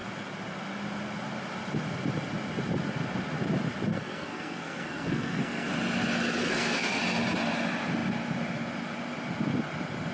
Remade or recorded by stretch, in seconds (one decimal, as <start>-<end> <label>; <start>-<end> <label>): 0.0-3.9 recorded; 3.9-5.7 remade; 5.7-6.4 recorded; 6.4-7.0 remade; 7.0-10.1 recorded